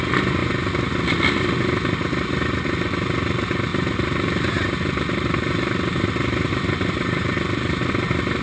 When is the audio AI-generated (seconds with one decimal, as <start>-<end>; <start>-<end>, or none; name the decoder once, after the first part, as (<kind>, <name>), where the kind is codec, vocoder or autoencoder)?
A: 3.7-7.9 (vocoder, BigVGAN v2)